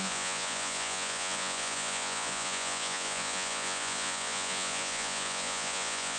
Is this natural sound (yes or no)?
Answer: no